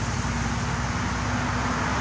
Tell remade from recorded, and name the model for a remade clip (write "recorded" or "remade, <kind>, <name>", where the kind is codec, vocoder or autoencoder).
recorded